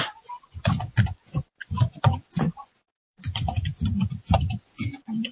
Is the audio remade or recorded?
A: remade